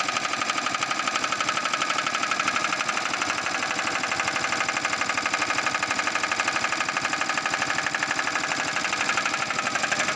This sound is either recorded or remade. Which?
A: recorded